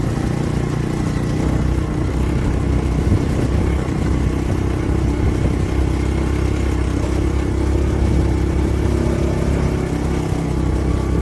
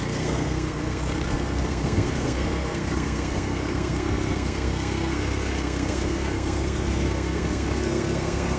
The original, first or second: first